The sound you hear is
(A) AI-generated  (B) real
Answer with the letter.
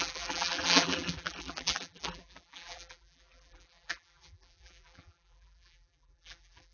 A